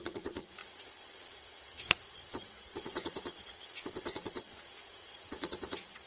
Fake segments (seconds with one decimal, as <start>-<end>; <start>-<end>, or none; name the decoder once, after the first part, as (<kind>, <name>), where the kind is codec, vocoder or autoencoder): 0.0-6.1 (vocoder, Vocos)